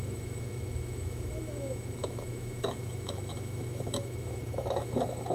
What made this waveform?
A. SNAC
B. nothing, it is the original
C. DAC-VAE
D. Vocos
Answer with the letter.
C